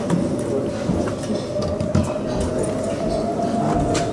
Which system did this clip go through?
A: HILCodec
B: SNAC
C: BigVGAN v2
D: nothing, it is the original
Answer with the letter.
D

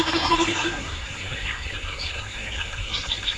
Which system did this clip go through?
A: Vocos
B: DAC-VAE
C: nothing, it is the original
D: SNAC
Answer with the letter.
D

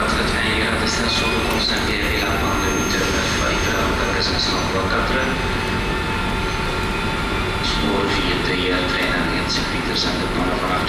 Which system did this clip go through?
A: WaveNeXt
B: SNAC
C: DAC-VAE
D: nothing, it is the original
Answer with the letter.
D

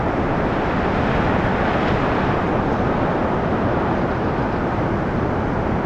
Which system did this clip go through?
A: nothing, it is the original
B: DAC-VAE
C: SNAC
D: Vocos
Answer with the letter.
A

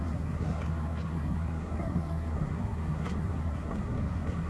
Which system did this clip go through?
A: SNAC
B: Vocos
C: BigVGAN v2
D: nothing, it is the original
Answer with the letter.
A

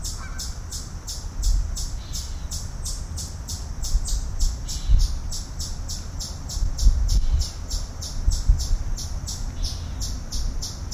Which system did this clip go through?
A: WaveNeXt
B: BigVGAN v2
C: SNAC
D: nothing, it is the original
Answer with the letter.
D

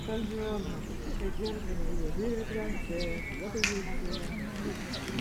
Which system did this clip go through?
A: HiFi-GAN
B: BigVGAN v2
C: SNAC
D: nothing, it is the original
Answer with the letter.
D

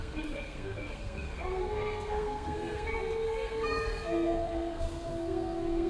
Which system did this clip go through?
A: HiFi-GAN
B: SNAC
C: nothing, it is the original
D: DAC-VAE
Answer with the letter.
B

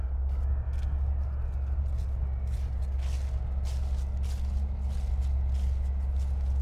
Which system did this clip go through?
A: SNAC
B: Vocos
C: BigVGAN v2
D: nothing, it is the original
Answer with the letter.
D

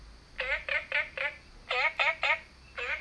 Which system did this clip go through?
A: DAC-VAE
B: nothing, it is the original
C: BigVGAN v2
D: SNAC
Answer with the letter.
B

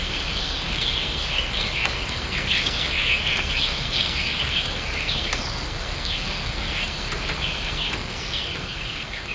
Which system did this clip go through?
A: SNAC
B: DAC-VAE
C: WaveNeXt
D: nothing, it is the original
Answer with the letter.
A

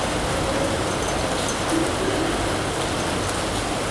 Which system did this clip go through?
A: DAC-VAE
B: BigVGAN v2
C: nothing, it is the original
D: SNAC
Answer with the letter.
C